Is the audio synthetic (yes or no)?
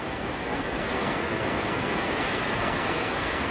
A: yes